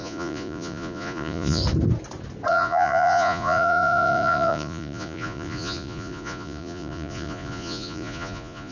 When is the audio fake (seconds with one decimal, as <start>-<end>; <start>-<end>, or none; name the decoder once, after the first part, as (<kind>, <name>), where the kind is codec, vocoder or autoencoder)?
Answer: 0.0-1.6 (vocoder, Vocos); 2.5-8.7